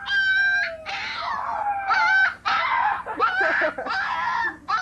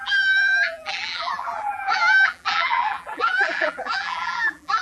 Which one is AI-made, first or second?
second